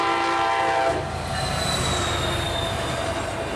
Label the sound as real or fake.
real